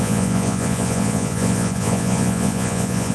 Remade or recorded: remade